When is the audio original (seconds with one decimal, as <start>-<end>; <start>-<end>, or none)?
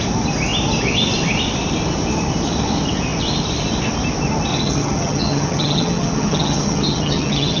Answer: 0.0-4.5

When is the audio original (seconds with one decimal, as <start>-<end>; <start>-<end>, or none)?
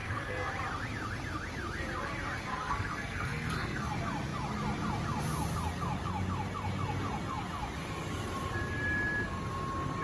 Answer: 0.5-2.5; 3.9-10.0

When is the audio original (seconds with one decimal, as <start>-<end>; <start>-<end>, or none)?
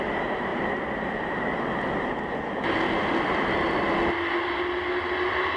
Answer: 0.0-5.6